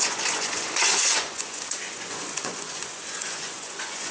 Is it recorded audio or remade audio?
remade